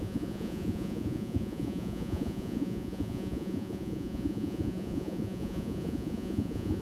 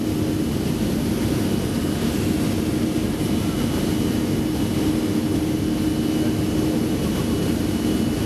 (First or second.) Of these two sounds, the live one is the second